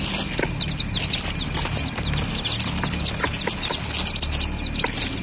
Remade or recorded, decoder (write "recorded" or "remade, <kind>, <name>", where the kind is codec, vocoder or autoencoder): recorded